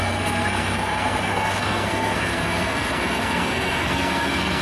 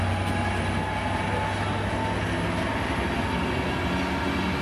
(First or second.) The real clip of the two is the second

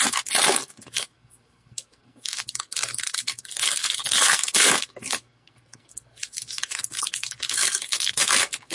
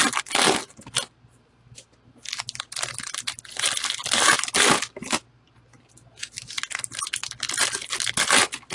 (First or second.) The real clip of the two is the second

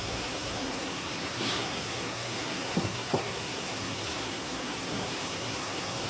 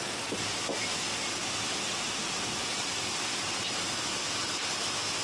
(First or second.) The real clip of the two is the second